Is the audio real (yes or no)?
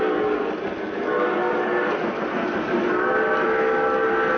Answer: yes